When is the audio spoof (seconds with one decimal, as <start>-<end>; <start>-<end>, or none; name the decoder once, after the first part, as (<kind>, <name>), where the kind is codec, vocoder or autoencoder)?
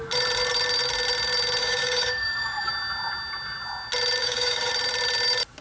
1.6-2.7 (codec, DAC); 4.2-4.7